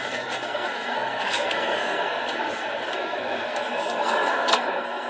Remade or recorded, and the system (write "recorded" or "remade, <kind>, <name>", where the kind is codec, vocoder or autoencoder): remade, codec, SNAC